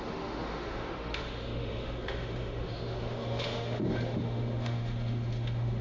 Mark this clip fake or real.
fake